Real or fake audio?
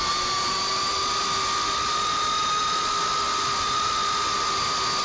real